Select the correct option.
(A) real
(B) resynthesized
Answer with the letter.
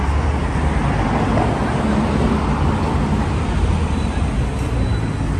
A